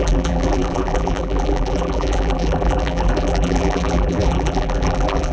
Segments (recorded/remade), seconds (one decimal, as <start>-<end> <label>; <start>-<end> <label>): 0.0-5.3 remade